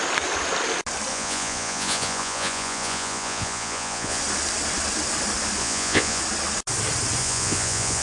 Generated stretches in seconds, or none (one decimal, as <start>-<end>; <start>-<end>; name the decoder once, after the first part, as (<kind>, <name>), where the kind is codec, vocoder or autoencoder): 1.1-4.2 (vocoder, Vocos); 5.6-6.2; 7.2-8.0